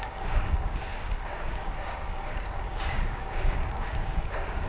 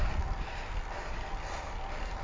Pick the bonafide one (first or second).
second